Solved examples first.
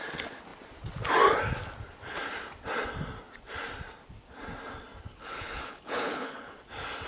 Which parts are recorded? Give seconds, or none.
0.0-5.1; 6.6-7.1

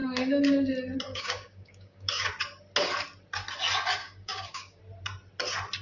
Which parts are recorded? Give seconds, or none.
0.7-1.1; 2.3-4.0; 4.8-5.8

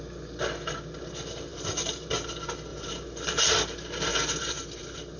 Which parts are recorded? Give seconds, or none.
0.0-1.5; 2.1-2.7; 3.5-4.1

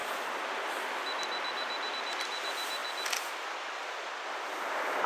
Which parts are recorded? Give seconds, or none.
0.0-5.1